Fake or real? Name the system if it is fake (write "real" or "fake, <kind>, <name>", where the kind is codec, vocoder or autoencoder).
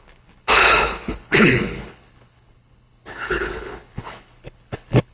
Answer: fake, codec, HILCodec